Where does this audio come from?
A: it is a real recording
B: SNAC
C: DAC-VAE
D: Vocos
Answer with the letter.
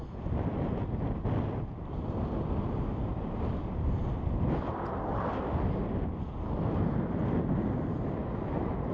A